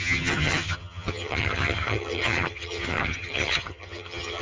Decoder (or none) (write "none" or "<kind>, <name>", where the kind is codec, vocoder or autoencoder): vocoder, HiFi-GAN